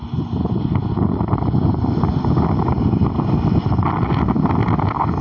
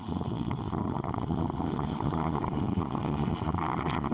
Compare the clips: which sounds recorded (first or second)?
first